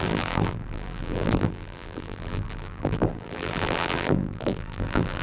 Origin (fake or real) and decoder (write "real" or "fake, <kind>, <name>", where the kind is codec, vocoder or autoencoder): fake, vocoder, BigVGAN v2